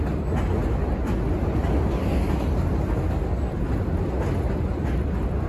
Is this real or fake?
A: real